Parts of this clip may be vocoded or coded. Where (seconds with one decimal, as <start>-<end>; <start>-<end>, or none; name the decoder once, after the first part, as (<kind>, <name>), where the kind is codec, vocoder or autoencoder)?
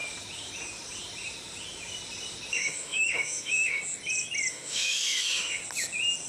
2.5-3.8 (autoencoder, DAC-VAE); 4.5-5.6